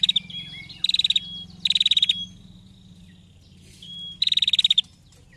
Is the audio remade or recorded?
recorded